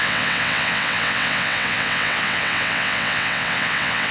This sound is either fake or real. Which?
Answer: fake